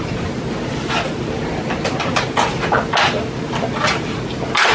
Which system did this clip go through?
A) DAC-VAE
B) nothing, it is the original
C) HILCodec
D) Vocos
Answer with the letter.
B